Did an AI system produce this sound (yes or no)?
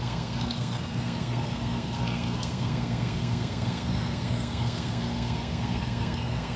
yes